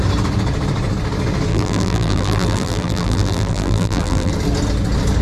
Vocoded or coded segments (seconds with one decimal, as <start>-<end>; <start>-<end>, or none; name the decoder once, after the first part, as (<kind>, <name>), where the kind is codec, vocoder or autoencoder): 1.5-4.3 (vocoder, BigVGAN v2)